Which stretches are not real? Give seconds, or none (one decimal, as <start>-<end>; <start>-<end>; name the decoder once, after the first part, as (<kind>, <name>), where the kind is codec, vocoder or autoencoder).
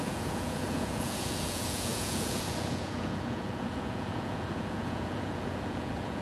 0.0-6.2 (vocoder, Vocos)